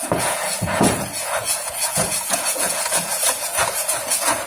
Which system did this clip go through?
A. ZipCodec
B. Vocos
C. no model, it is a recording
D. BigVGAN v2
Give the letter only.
B